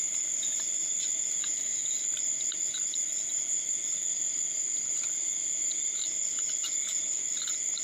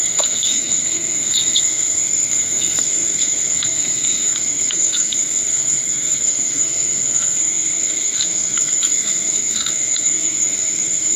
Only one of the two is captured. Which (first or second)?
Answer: first